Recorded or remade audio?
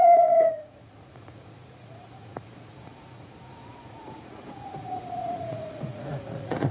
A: remade